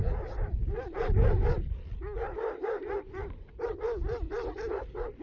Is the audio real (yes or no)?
yes